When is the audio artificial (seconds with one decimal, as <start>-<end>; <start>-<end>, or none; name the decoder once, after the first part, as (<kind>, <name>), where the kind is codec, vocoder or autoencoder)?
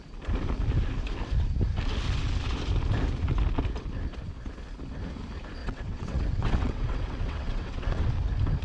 5.6-8.1 (vocoder, WaveNeXt)